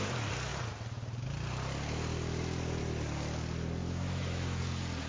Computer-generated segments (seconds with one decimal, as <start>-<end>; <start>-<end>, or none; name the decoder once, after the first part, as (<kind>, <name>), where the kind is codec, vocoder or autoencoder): 3.8-4.6 (autoencoder, DAC-VAE)